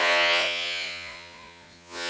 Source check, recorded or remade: remade